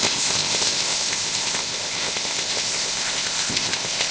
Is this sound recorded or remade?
remade